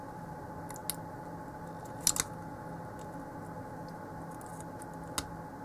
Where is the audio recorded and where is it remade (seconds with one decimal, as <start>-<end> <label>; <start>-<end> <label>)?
0.0-5.6 recorded